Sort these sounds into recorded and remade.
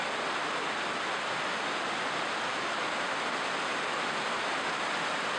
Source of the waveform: recorded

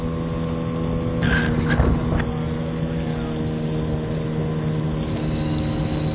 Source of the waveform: recorded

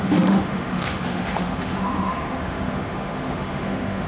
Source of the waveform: remade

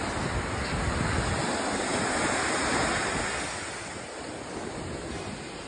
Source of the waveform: recorded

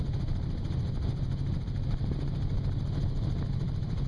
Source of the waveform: recorded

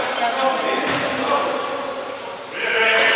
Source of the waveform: recorded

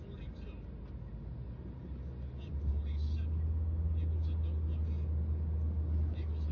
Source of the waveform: recorded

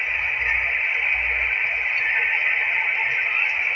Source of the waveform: recorded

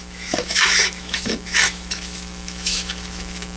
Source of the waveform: remade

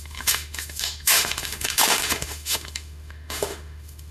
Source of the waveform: remade